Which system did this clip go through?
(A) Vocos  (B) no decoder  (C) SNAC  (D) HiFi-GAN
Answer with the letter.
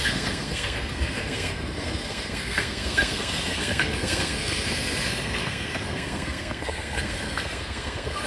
C